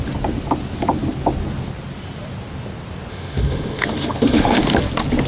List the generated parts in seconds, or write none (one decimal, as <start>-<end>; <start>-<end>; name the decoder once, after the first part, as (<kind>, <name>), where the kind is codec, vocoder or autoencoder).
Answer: 3.1-4.6 (autoencoder, DAC-VAE)